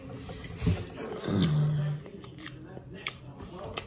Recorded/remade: recorded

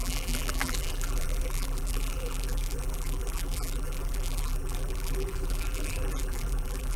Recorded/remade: remade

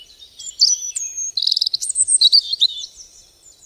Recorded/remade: remade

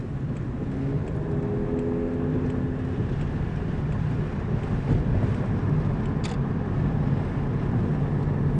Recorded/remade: recorded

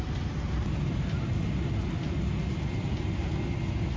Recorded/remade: recorded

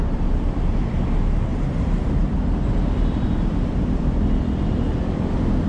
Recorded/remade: remade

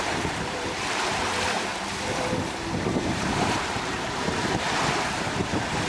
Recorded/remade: remade